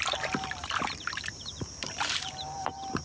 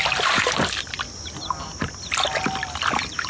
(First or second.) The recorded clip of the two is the second